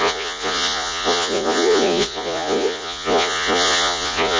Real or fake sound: fake